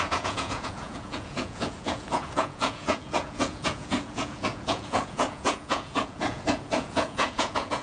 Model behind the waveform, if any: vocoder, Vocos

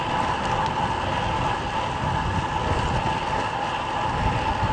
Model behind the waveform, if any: none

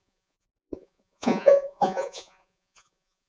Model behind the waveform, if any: vocoder, Vocos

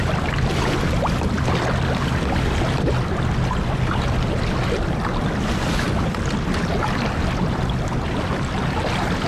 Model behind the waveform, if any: none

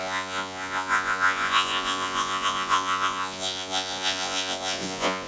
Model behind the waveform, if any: vocoder, Vocos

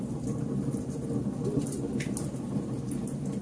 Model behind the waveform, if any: none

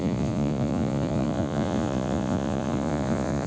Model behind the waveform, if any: vocoder, Vocos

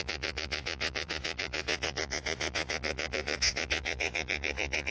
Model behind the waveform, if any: vocoder, Vocos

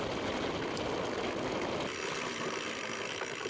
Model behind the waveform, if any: none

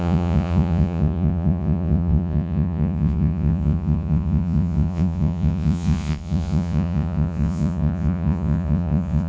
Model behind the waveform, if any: vocoder, Vocos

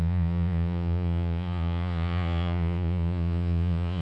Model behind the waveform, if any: vocoder, Vocos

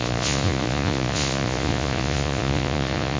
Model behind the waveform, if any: vocoder, Vocos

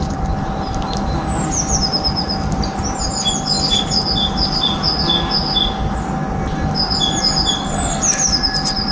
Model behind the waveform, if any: none